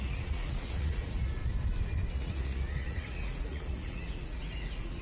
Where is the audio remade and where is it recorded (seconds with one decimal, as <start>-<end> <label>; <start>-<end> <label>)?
0.0-1.4 remade; 1.4-2.1 recorded; 2.1-5.0 remade